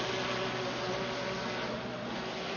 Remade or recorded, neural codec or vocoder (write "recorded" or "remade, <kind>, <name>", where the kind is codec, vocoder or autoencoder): recorded